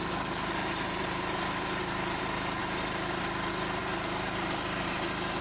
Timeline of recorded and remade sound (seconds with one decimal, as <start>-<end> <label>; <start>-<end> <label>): 0.0-0.6 recorded; 0.6-2.2 remade; 2.2-3.8 recorded; 3.8-4.9 remade; 4.9-5.4 recorded